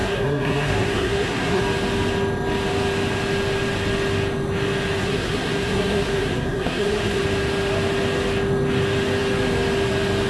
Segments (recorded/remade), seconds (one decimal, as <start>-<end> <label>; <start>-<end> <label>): 0.0-1.6 remade; 1.6-5.0 recorded; 5.0-7.2 remade; 7.2-10.3 recorded